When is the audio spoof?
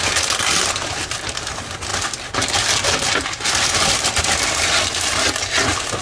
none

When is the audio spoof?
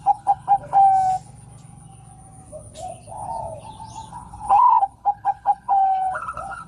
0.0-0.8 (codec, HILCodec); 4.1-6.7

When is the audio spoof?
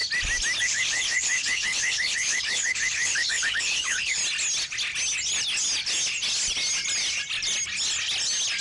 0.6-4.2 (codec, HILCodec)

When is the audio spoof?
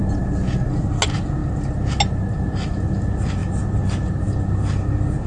none